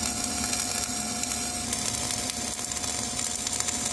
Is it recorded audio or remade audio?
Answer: recorded